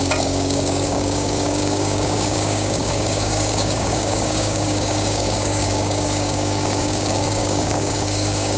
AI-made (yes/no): yes